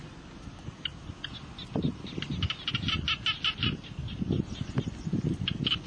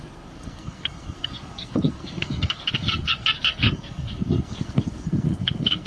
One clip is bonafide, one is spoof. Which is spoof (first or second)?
second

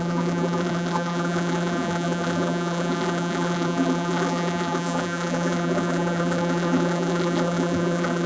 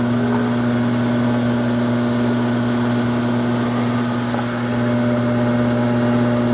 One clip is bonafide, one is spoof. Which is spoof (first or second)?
first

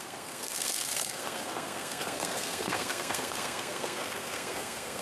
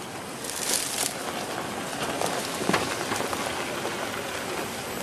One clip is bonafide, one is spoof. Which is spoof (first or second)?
first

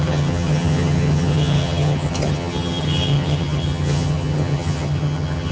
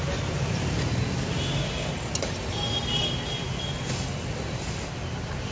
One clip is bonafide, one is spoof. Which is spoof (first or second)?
first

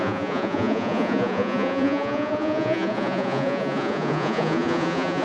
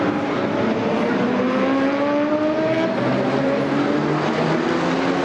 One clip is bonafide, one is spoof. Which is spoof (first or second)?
first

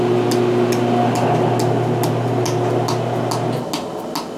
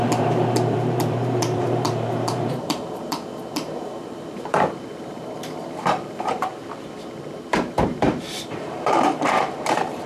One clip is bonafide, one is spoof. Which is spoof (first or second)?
second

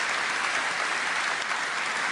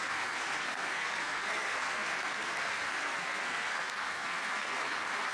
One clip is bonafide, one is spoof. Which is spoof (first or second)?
second